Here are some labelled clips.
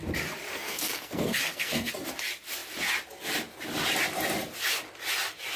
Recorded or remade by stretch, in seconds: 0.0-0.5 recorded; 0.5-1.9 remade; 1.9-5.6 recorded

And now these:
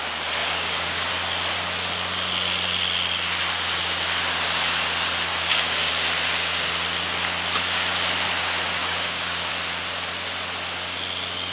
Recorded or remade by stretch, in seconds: 0.0-0.4 recorded; 0.4-1.1 remade; 1.1-5.3 recorded; 5.3-5.9 remade; 5.9-8.8 recorded; 8.8-9.5 remade; 9.5-11.5 recorded